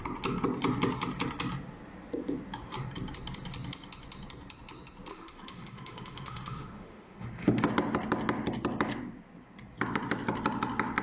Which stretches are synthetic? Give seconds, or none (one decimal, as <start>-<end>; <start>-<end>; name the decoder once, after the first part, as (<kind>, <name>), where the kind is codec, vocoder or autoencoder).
5.1-7.7 (autoencoder, DAC-VAE)